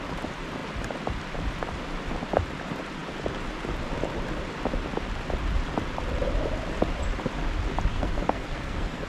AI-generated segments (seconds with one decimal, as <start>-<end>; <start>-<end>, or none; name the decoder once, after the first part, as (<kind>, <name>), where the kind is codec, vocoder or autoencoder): 7.9-9.1 (codec, SNAC)

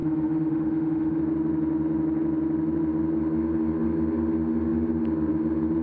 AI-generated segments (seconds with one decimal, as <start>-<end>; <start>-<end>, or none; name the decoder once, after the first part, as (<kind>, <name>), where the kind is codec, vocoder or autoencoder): 0.0-1.2 (autoencoder, DAC-VAE)

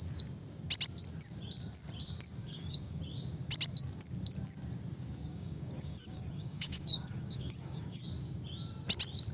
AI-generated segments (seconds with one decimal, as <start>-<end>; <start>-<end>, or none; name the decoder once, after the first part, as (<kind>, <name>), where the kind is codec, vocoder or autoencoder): 2.4-3.0 (codec, DAC); 5.3-8.0

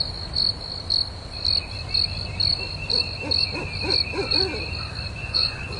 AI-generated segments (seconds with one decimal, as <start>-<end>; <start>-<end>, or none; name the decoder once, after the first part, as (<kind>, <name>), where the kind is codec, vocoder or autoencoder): 5.2-5.8 (vocoder, Vocos)

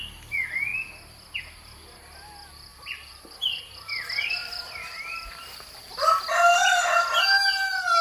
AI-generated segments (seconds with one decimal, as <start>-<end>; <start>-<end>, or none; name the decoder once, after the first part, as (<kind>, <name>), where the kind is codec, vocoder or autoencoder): 2.7-3.6 (vocoder, BigVGAN v2); 4.4-6.1

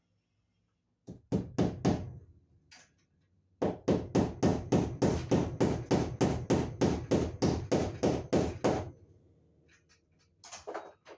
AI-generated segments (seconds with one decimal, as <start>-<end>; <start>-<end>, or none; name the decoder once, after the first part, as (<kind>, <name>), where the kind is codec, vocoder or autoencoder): none